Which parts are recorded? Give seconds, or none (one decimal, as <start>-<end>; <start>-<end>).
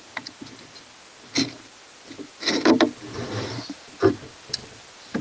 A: 0.0-5.2